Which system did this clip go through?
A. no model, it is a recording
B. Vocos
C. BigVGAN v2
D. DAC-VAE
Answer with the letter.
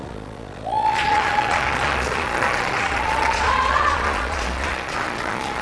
B